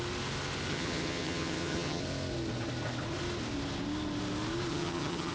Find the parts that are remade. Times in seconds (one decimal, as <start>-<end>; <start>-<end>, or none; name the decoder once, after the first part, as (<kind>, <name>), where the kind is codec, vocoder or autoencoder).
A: 0.7-2.0 (vocoder, HiFi-GAN); 4.7-5.3

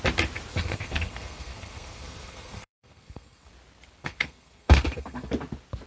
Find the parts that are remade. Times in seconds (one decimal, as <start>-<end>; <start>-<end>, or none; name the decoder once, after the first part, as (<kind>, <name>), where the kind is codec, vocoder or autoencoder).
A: 0.5-3.5 (codec, SNAC); 4.0-5.3

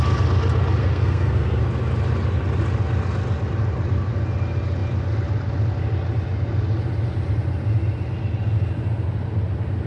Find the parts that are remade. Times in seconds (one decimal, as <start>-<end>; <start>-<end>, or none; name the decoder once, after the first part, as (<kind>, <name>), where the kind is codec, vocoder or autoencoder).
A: 0.8-1.6 (codec, SNAC)

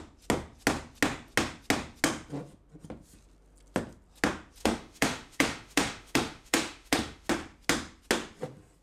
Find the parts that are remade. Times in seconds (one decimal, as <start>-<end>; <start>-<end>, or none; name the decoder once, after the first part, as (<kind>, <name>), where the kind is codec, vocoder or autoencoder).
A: 4.6-7.3 (autoencoder, DAC-VAE)

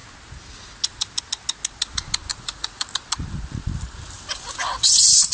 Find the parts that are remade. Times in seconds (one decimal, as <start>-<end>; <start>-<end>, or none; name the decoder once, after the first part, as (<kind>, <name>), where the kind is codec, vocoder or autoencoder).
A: 2.3-2.9 (vocoder, Vocos)

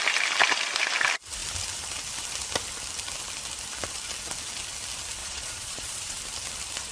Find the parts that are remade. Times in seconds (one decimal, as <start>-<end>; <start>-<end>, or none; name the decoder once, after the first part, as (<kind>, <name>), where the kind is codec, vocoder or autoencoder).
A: 5.2-6.2 (vocoder, Vocos)

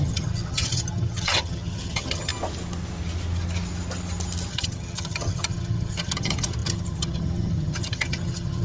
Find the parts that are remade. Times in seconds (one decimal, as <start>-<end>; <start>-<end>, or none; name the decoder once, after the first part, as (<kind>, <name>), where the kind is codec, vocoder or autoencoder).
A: 0.0-2.3 (vocoder, HiFi-GAN); 4.5-8.6